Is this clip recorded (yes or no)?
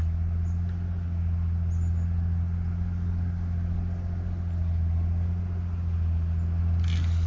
yes